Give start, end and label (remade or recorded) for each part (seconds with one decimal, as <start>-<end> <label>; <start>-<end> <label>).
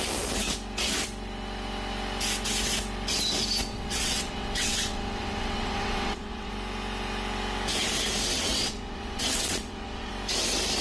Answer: 0.0-3.7 recorded; 3.7-6.5 remade; 6.5-8.3 recorded; 8.3-10.1 remade; 10.1-10.8 recorded